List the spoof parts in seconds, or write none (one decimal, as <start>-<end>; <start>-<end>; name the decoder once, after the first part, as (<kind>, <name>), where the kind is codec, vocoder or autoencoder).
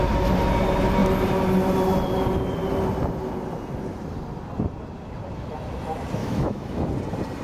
6.2-6.8 (autoencoder, DAC-VAE)